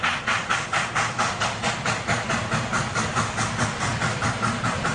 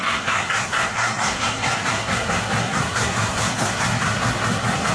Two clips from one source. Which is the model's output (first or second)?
second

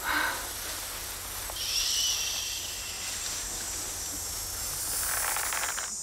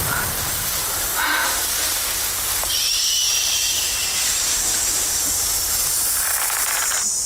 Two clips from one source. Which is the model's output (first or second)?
second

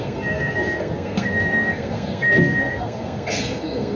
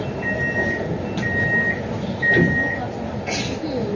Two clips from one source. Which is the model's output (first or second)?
first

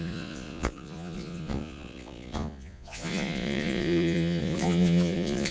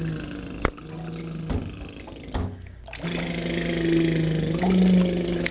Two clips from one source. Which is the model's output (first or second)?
first